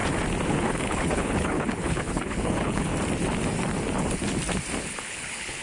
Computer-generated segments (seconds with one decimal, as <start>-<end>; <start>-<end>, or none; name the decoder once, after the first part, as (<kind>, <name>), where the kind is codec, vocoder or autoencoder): 0.5-2.9 (codec, HILCodec); 4.8-5.6